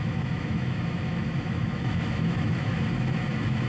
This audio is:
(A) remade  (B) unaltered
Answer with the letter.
A